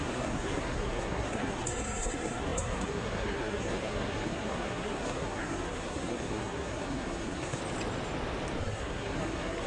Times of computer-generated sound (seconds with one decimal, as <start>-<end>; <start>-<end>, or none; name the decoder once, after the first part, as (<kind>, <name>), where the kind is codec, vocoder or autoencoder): 0.0-7.6 (codec, SNAC); 8.6-9.7